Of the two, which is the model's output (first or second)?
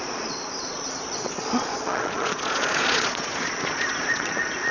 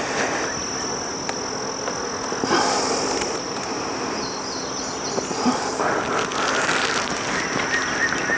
first